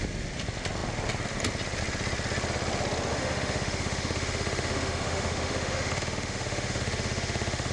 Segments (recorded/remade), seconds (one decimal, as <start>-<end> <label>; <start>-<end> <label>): 0.0-3.1 recorded; 3.1-7.7 remade